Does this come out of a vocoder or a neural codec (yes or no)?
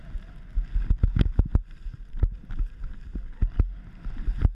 no